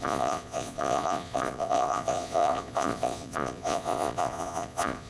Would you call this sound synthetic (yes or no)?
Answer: yes